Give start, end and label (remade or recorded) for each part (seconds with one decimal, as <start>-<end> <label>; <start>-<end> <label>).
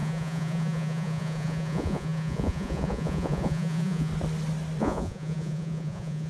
0.0-4.1 remade; 4.1-4.8 recorded; 4.8-6.3 remade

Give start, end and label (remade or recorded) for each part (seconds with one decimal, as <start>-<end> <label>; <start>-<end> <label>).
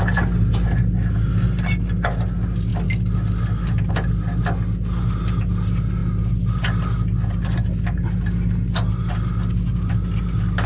0.0-10.7 recorded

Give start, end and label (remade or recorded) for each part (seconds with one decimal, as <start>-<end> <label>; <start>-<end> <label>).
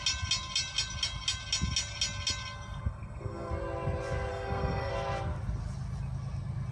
0.0-2.8 recorded; 2.8-3.5 remade; 3.5-4.3 recorded; 4.3-4.9 remade; 4.9-6.7 recorded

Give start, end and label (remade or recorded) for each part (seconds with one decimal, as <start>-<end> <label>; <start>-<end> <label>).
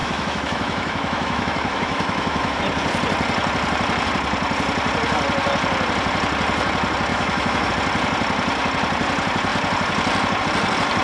0.0-2.6 remade; 2.6-7.1 recorded; 7.1-7.7 remade; 7.7-11.0 recorded